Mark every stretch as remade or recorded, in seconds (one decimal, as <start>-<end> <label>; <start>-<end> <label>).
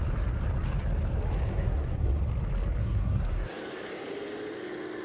0.0-1.5 recorded; 1.5-2.2 remade; 2.2-2.8 recorded; 2.8-3.5 remade; 3.5-5.0 recorded